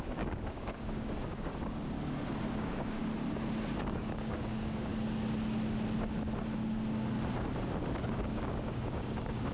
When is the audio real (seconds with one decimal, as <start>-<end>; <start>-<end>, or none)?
1.5-2.6; 3.0-3.8; 4.9-8.0